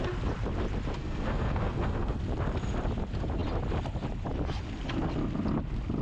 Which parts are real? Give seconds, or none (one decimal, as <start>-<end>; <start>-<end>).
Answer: 0.0-1.0; 2.2-6.0